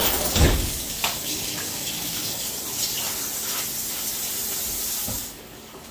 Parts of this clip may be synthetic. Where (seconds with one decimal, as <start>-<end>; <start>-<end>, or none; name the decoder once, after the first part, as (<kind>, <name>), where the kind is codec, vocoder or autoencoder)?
0.0-2.5 (codec, DAC); 5.0-5.9